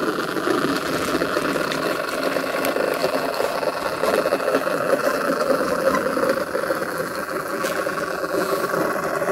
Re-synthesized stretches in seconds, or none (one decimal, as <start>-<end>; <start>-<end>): 0.0-1.4; 3.0-6.2; 6.8-8.6